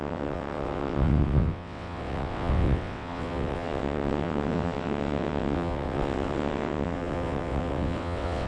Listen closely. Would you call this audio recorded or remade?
remade